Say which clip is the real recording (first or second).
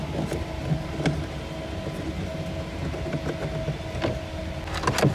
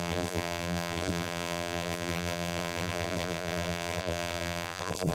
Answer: first